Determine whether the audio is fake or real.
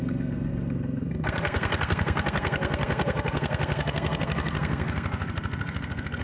fake